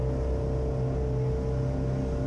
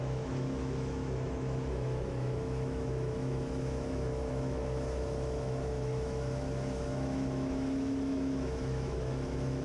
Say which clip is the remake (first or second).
second